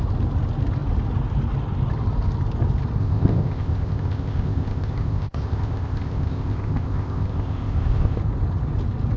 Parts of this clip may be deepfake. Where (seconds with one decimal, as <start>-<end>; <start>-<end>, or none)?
3.0-8.2